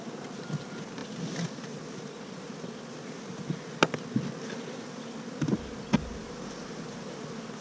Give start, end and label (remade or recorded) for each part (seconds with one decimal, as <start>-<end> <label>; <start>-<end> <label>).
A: 0.0-7.6 recorded